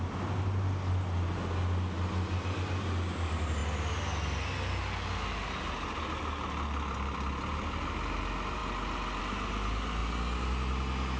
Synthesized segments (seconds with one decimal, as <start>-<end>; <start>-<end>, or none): none